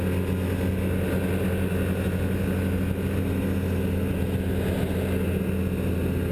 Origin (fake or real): real